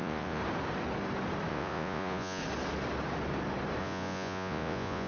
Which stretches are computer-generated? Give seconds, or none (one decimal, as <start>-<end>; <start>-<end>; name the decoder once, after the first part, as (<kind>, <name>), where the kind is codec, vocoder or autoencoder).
0.0-0.4 (vocoder, Vocos); 1.5-2.4; 3.8-5.1